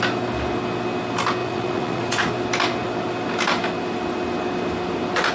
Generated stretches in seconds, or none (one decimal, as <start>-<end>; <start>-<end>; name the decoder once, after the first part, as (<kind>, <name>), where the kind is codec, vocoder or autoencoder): 1.4-2.3 (vocoder, Vocos)